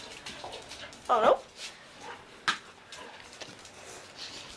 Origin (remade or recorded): recorded